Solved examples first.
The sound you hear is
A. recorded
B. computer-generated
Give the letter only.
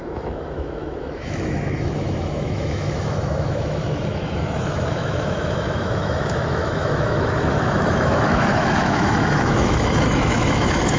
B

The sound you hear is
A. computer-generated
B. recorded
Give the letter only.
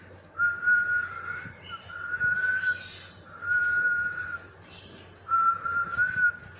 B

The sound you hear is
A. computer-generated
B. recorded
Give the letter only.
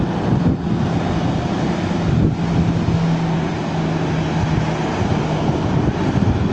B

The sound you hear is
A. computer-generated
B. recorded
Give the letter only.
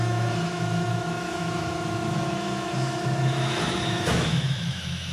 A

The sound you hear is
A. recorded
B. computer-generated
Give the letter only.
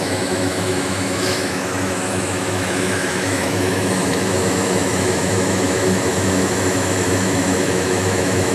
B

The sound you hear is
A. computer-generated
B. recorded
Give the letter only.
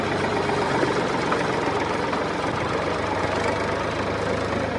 B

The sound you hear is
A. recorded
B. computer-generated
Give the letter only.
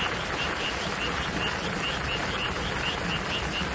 A